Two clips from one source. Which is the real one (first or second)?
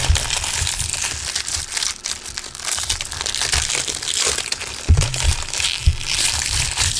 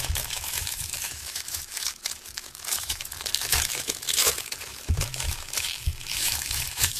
first